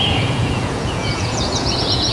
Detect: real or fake fake